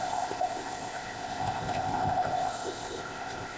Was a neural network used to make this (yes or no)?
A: yes